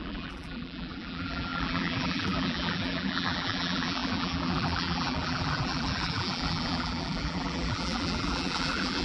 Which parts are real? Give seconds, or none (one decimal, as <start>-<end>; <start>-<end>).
none